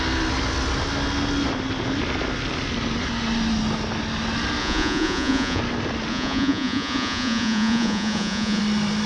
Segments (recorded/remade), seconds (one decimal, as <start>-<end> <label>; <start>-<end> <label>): 0.0-4.6 recorded; 4.6-5.6 remade; 5.6-6.1 recorded; 6.1-8.6 remade; 8.6-9.1 recorded